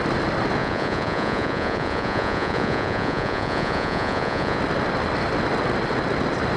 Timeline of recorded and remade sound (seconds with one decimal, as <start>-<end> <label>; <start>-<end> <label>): 0.0-0.6 recorded; 0.6-4.6 remade; 4.6-6.6 recorded